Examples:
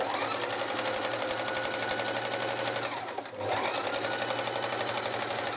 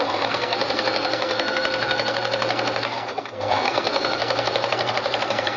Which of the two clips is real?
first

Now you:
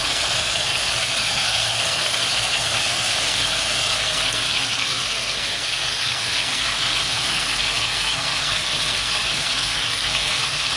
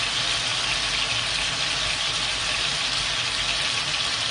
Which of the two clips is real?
second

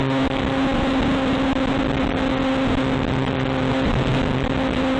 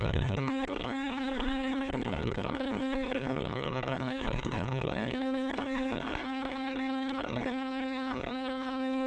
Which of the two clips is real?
first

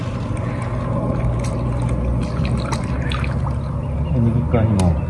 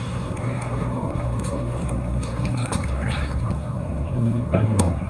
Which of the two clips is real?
first